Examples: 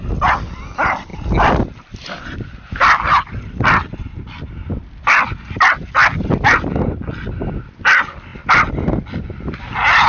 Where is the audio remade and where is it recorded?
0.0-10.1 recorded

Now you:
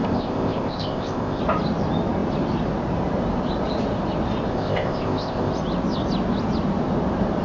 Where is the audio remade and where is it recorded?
0.0-1.4 remade; 1.4-4.5 recorded; 4.5-5.5 remade; 5.5-7.4 recorded

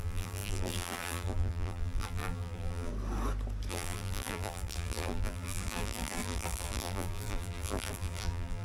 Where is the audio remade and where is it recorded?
0.0-2.9 remade; 2.9-3.7 recorded; 3.7-8.6 remade

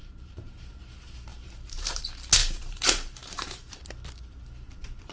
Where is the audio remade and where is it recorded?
0.0-0.8 remade; 0.8-1.3 recorded; 1.3-2.0 remade; 2.0-2.4 recorded; 2.4-3.8 remade; 3.8-5.1 recorded

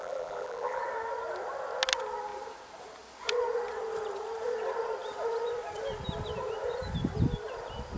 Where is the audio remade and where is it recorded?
0.0-0.8 remade; 0.8-8.0 recorded

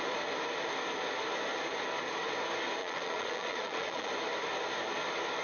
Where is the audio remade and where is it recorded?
0.0-2.8 recorded; 2.8-4.1 remade; 4.1-5.4 recorded